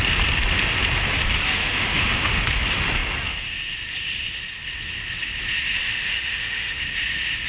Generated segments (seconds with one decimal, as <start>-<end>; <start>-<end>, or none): 1.6-2.4; 5.8-6.8